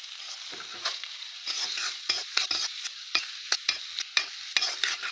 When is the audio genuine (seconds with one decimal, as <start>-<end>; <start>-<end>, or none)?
0.0-0.7; 3.8-5.1